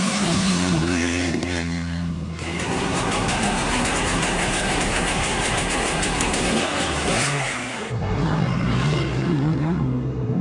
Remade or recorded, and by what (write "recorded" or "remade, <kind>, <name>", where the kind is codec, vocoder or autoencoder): remade, codec, SNAC